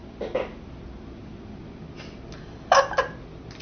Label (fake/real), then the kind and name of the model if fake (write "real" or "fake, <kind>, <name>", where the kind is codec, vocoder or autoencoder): real